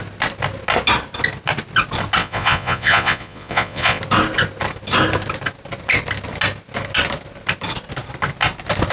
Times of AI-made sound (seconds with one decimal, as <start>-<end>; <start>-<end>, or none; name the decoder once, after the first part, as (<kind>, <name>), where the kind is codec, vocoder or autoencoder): 2.2-4.0 (vocoder, Vocos)